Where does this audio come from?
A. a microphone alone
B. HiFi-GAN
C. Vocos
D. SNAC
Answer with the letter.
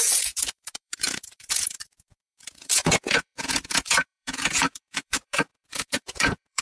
C